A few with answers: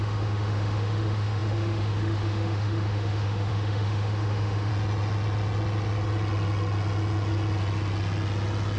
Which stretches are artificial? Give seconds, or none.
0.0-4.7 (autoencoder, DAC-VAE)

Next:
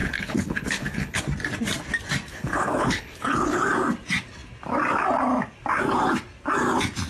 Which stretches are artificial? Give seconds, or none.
0.0-1.2 (codec, HILCodec); 2.3-3.6

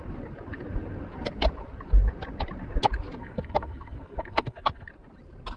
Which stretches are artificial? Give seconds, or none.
3.2-4.9 (codec, SNAC)

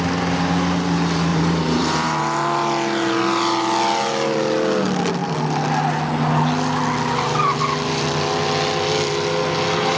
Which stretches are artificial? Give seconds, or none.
1.3-2.2 (vocoder, BigVGAN v2)